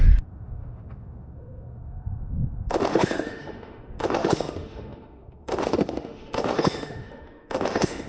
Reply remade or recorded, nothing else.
remade